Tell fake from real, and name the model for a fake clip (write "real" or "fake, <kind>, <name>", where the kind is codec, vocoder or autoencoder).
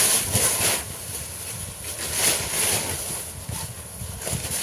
real